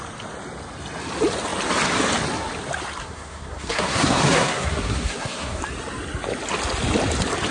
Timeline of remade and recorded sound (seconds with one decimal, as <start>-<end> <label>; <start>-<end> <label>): 0.0-3.0 recorded; 3.0-5.6 remade; 5.6-7.5 recorded